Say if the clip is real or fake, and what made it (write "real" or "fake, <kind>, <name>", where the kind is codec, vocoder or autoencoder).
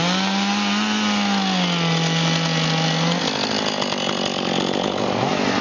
real